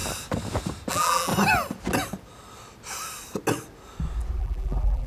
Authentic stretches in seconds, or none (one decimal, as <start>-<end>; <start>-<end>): 0.0-0.9; 1.3-4.4